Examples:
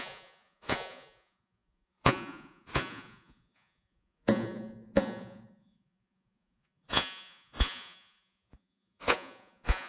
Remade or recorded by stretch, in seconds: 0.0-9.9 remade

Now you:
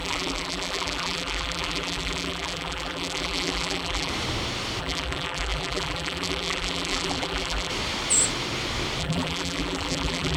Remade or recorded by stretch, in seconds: 0.0-4.1 remade; 4.1-4.8 recorded; 4.8-7.7 remade; 7.7-9.0 recorded; 9.0-10.4 remade

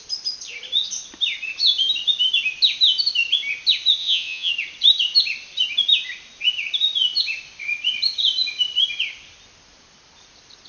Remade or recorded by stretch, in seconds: 0.0-4.0 recorded; 4.0-4.5 remade; 4.5-10.7 recorded

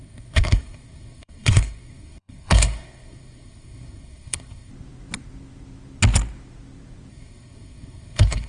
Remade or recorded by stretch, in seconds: 0.0-4.7 remade; 4.7-7.1 recorded; 7.1-8.5 remade

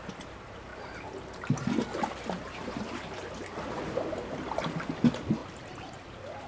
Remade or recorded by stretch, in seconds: 0.0-6.5 recorded

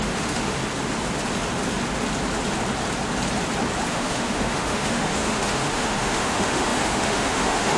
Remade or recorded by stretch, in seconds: 0.0-0.6 remade; 0.6-3.9 recorded; 3.9-7.8 remade

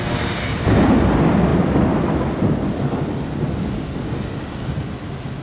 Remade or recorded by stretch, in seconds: 0.0-5.4 recorded